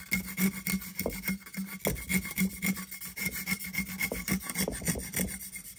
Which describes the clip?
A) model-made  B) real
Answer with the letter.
B